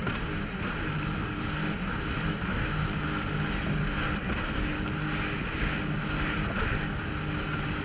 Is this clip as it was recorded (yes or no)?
yes